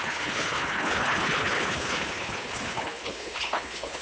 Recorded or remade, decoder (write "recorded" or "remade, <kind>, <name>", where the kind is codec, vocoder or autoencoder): remade, codec, HILCodec